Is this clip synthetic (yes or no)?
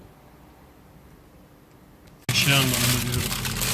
no